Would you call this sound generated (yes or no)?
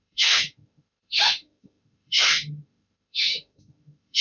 yes